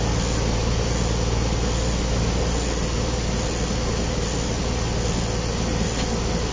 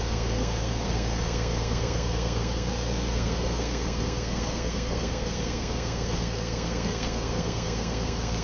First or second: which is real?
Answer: first